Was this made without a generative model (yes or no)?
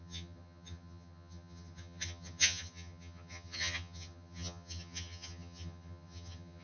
no